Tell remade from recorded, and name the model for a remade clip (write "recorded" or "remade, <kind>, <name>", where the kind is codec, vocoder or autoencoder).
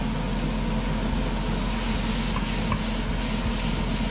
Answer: recorded